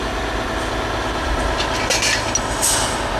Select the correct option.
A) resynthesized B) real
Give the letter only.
B